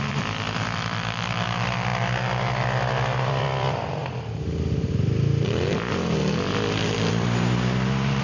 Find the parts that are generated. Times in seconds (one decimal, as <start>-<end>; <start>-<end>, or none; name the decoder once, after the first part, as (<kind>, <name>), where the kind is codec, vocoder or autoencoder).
0.0-1.9 (vocoder, BigVGAN v2); 3.2-4.0; 7.1-8.2